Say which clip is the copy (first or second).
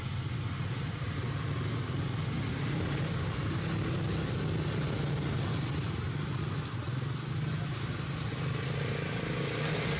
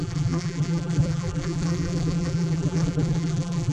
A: second